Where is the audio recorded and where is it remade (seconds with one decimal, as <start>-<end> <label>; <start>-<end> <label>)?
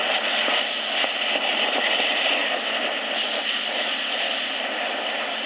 0.0-5.5 recorded